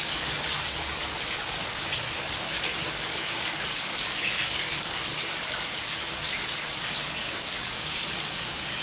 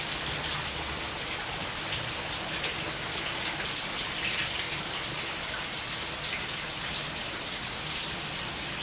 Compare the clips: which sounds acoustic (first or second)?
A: second